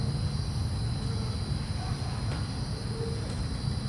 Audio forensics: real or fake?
real